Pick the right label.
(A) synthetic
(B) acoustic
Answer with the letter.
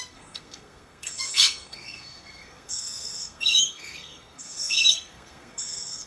A